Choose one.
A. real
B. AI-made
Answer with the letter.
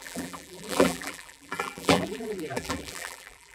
B